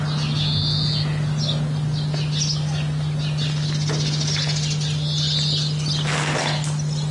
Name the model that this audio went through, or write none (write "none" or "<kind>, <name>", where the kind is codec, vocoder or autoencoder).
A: none